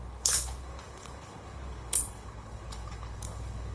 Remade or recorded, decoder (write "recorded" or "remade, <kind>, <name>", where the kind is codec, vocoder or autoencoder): remade, codec, HILCodec